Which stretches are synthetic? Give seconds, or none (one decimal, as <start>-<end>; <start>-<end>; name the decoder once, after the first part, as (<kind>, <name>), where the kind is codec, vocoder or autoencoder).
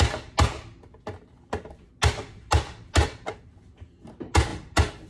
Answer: none